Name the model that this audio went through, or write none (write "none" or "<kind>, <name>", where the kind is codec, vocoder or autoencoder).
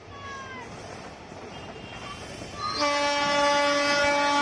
none